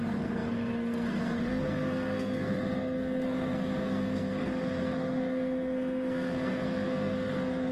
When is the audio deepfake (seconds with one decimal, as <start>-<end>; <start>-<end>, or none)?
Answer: 0.0-7.7